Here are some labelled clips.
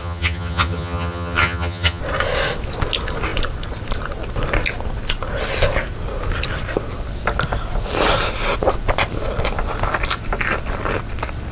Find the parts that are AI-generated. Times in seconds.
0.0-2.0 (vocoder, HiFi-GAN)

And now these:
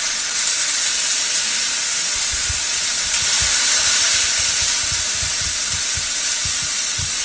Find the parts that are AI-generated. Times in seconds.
none